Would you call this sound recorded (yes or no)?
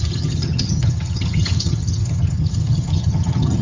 no